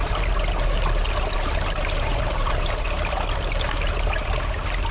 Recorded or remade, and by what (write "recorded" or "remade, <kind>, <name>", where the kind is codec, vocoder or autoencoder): recorded